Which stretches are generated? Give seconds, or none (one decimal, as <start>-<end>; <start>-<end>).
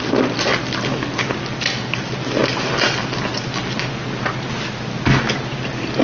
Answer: none